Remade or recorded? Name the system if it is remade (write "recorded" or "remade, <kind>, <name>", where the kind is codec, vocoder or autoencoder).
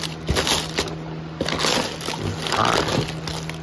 recorded